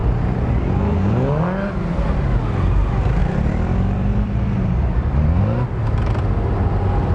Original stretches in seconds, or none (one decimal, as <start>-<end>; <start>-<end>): 0.0-3.2; 5.4-7.1